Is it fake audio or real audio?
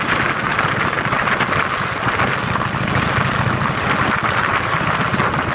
real